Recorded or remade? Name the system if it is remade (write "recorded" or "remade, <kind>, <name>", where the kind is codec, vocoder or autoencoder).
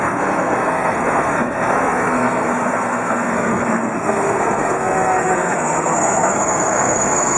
remade, codec, SNAC